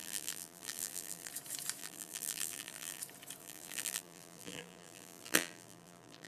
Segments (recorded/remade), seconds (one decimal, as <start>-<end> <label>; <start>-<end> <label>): 0.0-1.3 remade; 1.3-1.8 recorded; 1.8-3.0 remade; 3.0-3.4 recorded; 3.4-6.3 remade